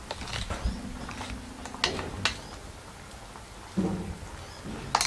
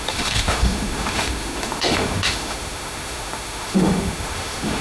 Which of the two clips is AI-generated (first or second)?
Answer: second